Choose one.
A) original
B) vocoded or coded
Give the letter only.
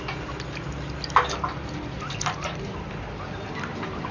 A